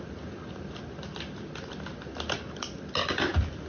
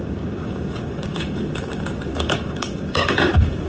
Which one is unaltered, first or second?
first